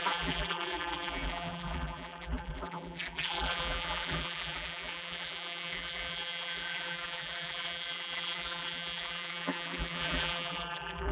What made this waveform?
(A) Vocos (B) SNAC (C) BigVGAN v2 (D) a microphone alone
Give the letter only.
C